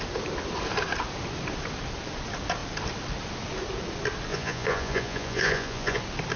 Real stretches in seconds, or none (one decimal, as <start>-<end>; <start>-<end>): 0.0-4.3; 6.0-6.4